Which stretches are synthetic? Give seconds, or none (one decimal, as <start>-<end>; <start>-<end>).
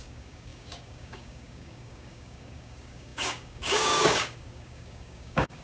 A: 0.0-5.6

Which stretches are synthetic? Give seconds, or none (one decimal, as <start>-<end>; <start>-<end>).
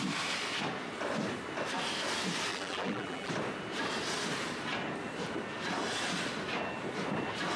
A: 2.5-3.3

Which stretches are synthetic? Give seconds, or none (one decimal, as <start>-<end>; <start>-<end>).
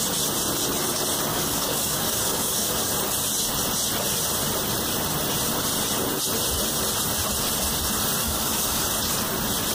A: 1.3-2.9; 8.2-8.8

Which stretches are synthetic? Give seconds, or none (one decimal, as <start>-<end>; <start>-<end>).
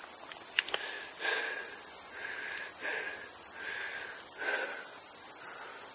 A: none